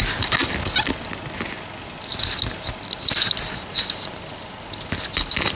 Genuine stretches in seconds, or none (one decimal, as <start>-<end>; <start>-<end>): 0.0-5.6